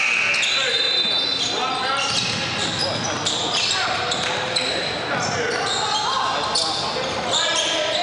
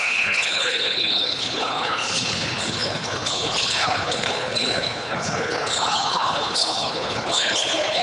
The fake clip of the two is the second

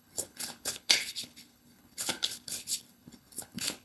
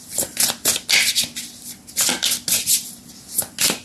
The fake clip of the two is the first